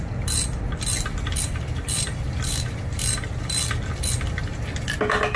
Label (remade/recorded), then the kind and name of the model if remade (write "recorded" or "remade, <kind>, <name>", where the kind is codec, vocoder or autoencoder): recorded